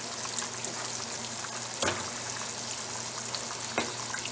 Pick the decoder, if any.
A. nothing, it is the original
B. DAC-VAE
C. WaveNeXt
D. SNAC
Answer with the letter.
A